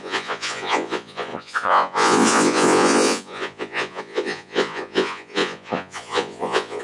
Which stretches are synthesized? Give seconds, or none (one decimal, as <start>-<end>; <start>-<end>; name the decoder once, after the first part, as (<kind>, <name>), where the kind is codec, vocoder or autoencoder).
0.0-6.8 (vocoder, Vocos)